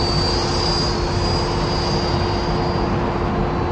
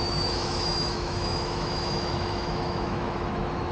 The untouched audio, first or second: first